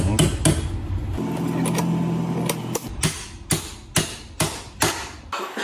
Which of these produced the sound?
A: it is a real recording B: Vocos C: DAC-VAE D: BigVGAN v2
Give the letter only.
A